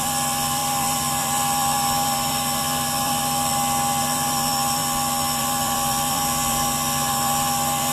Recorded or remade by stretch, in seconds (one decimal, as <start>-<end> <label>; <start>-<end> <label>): 0.0-3.5 remade; 3.5-4.0 recorded; 4.0-4.8 remade; 4.8-5.4 recorded; 5.4-7.9 remade